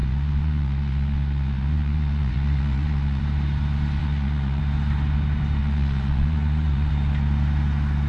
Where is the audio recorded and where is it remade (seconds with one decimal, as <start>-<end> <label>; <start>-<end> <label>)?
0.0-3.2 remade; 3.2-4.0 recorded; 4.0-4.6 remade; 4.6-5.6 recorded; 5.6-6.9 remade; 6.9-8.1 recorded

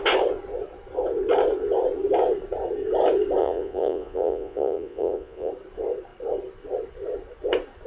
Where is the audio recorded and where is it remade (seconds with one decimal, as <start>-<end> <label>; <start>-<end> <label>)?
0.0-3.4 recorded; 3.4-5.5 remade; 5.5-7.9 recorded

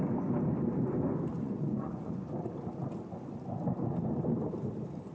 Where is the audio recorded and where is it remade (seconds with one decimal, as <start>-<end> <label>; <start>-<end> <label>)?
0.0-1.3 recorded; 1.3-2.2 remade; 2.2-5.1 recorded

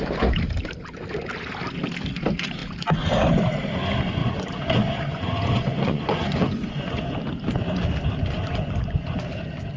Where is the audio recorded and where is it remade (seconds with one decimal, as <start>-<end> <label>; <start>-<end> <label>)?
0.0-4.2 recorded; 4.2-7.0 remade; 7.0-8.4 recorded; 8.4-9.2 remade; 9.2-9.8 recorded

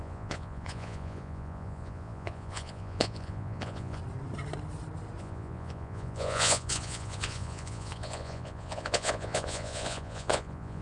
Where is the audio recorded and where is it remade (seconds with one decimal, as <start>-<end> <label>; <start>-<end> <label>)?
0.0-4.0 remade; 4.0-5.2 recorded; 5.2-10.8 remade

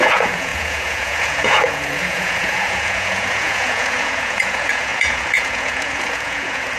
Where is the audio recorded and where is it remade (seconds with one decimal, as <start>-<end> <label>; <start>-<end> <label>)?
0.0-6.8 remade